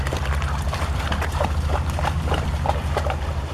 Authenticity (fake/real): fake